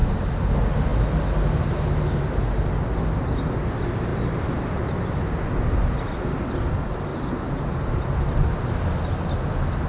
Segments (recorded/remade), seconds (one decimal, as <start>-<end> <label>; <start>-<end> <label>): 0.0-0.5 remade; 0.5-4.1 recorded; 4.1-4.8 remade; 4.8-7.1 recorded; 7.1-8.5 remade; 8.5-9.9 recorded

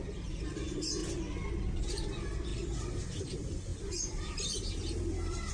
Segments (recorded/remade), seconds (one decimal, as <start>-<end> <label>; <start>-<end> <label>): 0.0-1.0 remade; 1.0-1.8 recorded; 1.8-5.5 remade